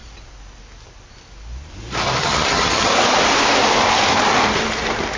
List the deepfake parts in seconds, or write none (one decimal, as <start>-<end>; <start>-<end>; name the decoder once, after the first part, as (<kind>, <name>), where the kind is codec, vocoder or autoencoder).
2.2-2.9 (vocoder, HiFi-GAN)